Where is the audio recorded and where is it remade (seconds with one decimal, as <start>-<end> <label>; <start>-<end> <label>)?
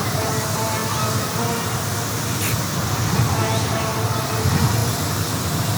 0.0-5.8 recorded